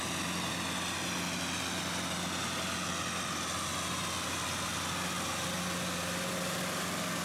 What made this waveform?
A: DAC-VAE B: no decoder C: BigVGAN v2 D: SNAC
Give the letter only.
B